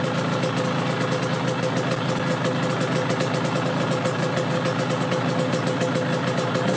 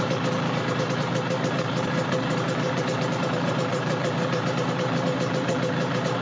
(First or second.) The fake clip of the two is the second